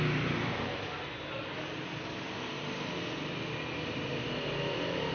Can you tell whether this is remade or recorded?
recorded